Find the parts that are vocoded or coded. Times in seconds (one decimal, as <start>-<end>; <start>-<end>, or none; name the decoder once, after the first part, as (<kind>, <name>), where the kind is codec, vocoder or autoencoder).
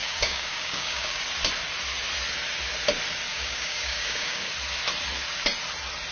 0.0-1.2 (codec, DAC); 3.3-4.5